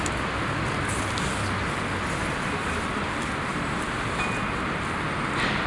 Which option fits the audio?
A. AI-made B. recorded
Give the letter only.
B